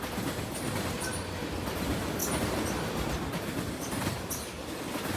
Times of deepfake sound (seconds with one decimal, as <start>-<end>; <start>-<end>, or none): none